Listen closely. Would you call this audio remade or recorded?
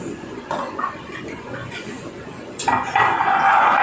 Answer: remade